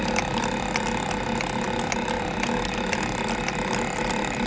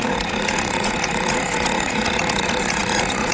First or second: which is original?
first